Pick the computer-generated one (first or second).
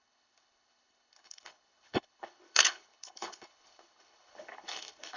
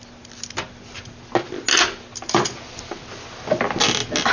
first